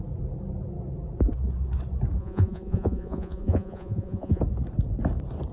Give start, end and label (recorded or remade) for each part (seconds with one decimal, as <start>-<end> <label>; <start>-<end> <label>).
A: 0.0-2.2 recorded; 2.2-4.4 remade; 4.4-5.5 recorded